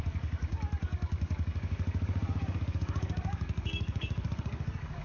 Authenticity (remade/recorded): remade